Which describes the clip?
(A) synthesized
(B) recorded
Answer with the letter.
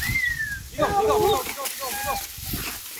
B